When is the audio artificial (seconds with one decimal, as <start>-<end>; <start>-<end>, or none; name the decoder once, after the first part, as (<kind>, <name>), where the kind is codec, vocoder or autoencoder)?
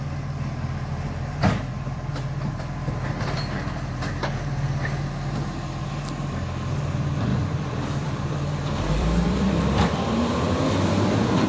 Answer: 1.4-2.1 (vocoder, BigVGAN v2); 7.3-10.6